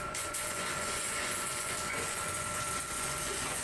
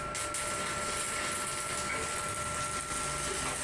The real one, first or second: second